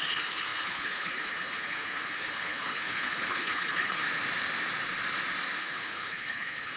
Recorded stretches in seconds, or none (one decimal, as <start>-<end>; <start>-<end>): 4.0-5.6